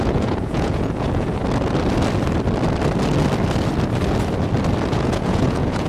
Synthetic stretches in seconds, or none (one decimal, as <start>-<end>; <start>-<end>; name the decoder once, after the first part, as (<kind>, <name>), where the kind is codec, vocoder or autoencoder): 0.0-1.4 (vocoder, Vocos); 4.9-5.9